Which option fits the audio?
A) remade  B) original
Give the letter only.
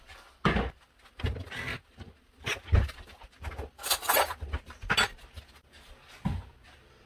B